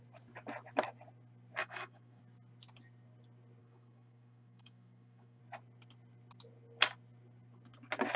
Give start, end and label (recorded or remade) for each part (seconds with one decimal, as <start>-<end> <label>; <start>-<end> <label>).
0.0-1.6 recorded; 1.6-2.2 remade; 2.2-3.6 recorded; 3.6-5.4 remade; 5.4-8.2 recorded